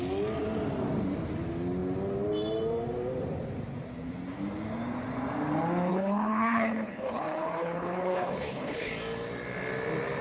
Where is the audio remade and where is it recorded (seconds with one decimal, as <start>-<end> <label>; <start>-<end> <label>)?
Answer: 0.0-5.9 recorded; 5.9-8.9 remade; 8.9-10.2 recorded